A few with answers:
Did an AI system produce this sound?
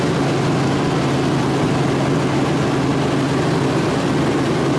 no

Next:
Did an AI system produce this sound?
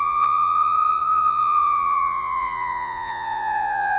yes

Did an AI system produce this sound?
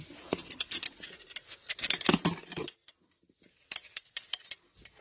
no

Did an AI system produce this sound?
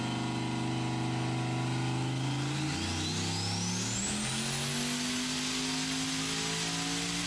no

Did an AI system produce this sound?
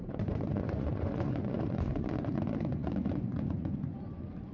yes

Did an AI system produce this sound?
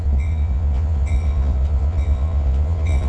yes